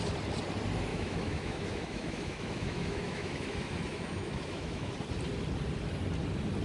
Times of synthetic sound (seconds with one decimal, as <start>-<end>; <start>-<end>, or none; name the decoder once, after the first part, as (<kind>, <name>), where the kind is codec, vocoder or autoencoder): 0.9-4.9 (autoencoder, DAC-VAE)